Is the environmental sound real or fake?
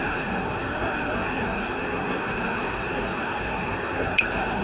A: fake